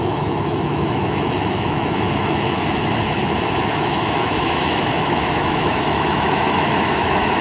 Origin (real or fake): fake